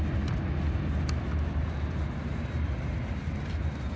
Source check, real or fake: real